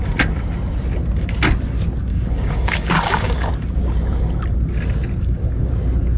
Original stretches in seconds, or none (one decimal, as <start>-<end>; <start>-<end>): 0.0-2.1; 3.5-5.2; 5.7-6.2